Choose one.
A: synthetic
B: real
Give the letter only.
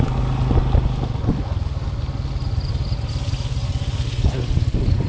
B